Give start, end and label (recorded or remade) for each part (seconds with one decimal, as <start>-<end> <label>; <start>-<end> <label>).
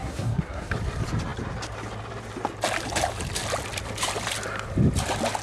0.0-0.7 remade; 0.7-5.4 recorded